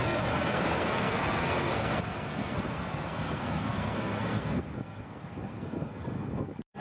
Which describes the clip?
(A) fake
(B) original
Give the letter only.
A